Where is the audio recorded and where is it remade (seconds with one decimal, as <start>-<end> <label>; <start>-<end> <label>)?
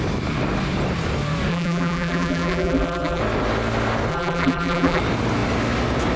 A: 0.0-1.5 recorded; 1.5-3.2 remade; 3.2-4.1 recorded; 4.1-5.0 remade; 5.0-6.2 recorded